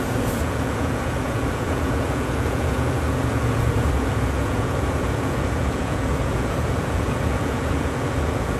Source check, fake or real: fake